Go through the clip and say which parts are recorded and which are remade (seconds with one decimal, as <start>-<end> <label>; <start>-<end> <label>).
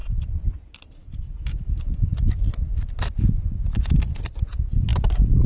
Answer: 0.0-0.5 remade; 0.5-5.5 recorded